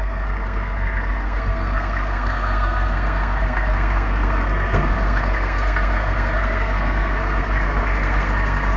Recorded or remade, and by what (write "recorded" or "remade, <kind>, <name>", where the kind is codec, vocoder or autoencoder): remade, codec, SNAC